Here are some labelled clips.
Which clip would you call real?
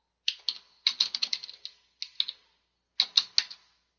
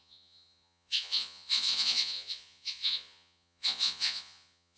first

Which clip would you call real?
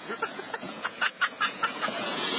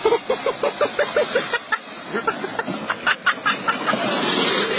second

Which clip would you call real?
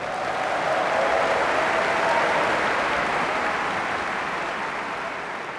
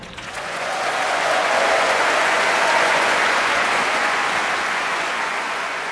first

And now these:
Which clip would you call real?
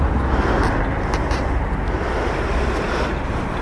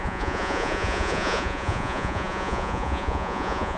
first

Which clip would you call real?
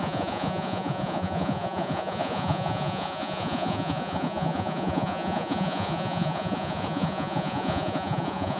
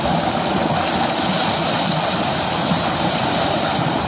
second